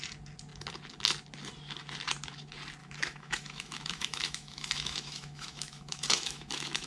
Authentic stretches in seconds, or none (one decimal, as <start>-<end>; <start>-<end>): 0.0-2.8